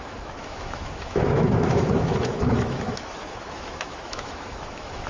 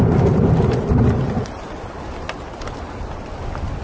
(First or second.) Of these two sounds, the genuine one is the second